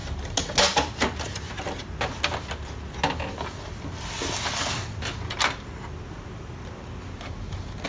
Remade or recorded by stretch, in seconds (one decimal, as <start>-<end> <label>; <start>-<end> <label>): 0.0-7.9 recorded